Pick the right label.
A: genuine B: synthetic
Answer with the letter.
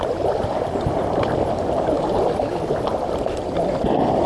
B